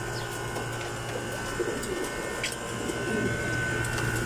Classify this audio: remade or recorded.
recorded